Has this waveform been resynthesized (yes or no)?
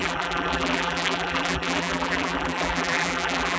yes